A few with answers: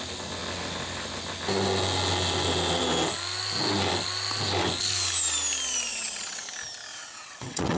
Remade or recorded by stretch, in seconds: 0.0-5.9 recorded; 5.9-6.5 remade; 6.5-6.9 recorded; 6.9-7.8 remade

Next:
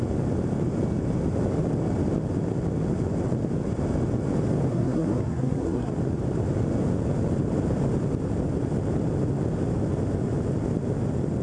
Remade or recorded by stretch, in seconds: 0.0-4.7 recorded; 4.7-5.9 remade; 5.9-11.4 recorded